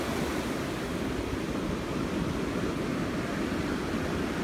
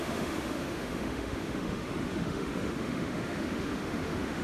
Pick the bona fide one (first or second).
first